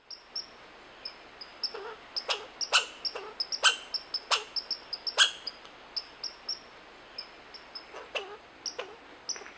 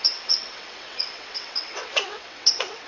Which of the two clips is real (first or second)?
first